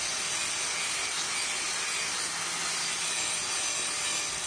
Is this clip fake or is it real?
real